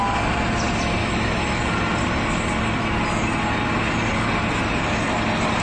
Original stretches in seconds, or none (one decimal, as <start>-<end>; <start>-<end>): 0.0-1.0; 1.6-5.6